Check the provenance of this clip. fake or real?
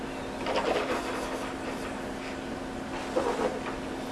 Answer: real